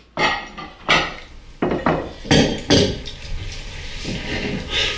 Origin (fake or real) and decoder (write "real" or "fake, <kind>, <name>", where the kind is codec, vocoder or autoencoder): real